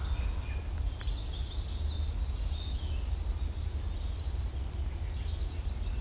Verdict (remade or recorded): recorded